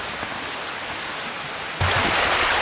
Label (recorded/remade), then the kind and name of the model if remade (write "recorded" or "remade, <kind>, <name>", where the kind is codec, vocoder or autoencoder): recorded